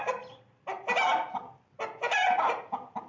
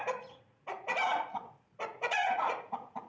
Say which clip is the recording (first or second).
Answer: first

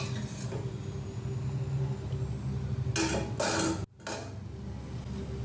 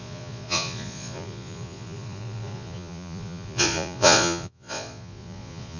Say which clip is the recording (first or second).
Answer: first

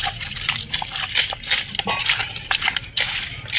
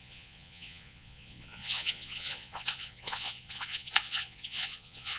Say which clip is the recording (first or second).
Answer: first